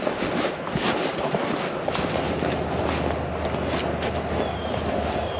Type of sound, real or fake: real